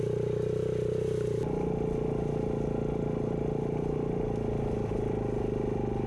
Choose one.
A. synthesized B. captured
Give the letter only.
B